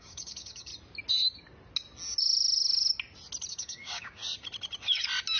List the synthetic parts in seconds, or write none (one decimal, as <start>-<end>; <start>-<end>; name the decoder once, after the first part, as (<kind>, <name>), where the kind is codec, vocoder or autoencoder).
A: 0.0-0.7 (codec, DAC); 3.5-4.2